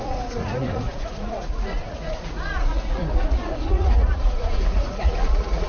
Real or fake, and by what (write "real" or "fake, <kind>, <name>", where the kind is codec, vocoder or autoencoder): fake, vocoder, Vocos